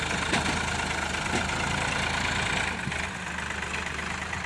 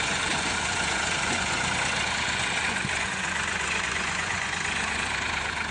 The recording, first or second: first